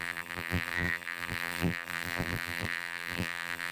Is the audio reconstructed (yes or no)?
yes